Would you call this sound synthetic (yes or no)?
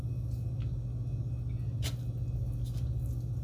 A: no